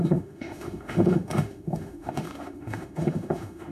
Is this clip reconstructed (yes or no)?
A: yes